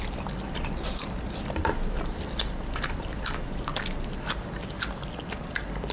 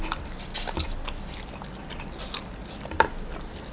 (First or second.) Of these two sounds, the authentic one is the second